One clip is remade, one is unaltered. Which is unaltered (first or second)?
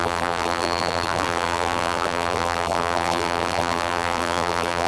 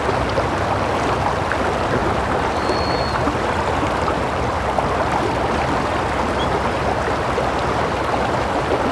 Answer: second